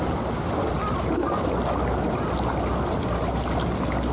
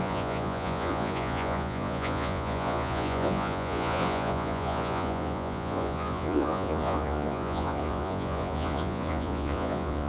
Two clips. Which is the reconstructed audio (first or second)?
second